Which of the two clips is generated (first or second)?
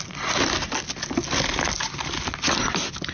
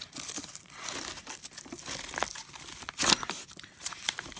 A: second